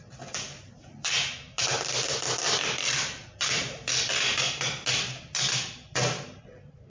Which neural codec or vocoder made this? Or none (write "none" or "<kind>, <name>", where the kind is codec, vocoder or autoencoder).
none